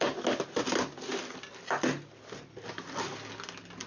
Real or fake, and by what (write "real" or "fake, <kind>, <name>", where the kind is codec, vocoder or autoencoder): real